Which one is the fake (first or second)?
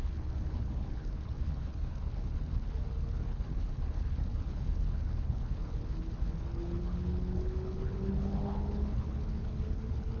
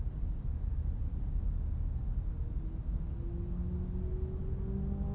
first